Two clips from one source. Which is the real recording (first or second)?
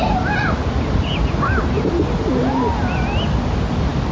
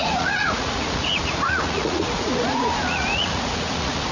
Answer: first